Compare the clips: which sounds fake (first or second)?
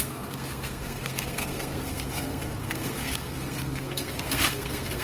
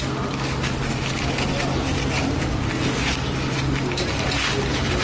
first